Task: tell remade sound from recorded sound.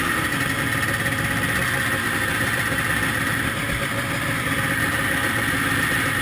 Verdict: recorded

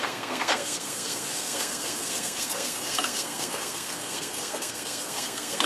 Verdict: remade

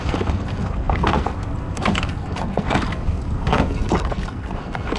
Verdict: remade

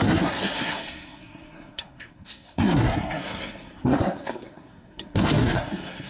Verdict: remade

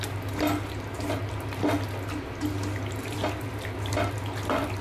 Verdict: recorded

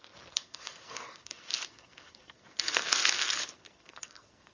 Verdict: remade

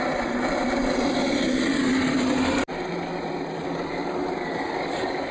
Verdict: recorded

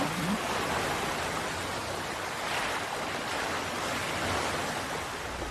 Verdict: recorded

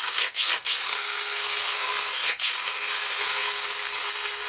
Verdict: remade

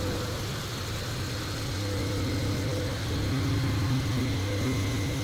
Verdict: recorded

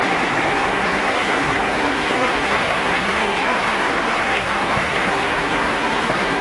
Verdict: remade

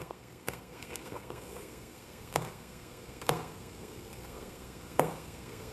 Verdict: remade